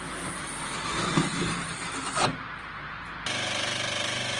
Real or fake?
real